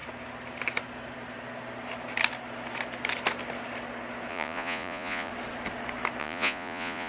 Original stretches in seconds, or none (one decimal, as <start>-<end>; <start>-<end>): 0.0-4.3; 5.3-6.2